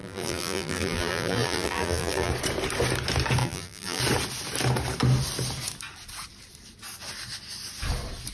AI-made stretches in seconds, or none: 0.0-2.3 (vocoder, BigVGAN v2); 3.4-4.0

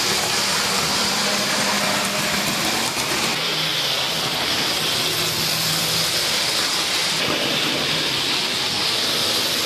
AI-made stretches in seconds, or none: none